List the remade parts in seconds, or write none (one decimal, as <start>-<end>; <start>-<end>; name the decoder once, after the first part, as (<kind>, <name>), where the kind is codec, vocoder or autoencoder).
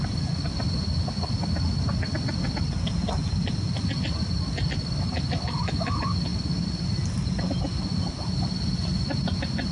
none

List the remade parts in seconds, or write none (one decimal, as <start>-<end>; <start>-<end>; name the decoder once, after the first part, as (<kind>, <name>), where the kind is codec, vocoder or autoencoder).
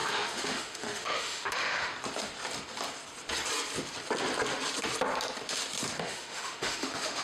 0.0-1.9 (autoencoder, DAC-VAE); 6.0-7.2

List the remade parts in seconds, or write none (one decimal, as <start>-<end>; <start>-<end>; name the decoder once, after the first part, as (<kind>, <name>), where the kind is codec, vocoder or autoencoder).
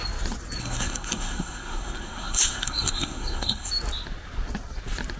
0.6-3.7 (codec, SNAC)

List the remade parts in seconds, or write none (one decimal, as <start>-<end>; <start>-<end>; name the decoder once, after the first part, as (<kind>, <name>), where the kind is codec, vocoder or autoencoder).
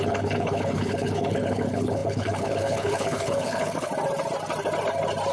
0.0-3.9 (codec, HILCodec)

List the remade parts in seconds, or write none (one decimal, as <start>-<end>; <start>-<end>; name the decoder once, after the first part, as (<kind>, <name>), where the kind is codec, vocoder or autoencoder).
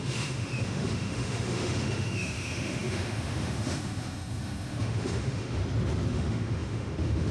0.0-5.6 (autoencoder, DAC-VAE); 6.1-7.3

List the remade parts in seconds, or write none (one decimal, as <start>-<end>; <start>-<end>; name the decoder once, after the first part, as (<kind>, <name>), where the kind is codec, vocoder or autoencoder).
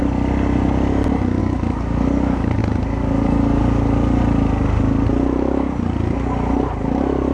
1.4-2.6 (codec, DAC); 3.0-3.6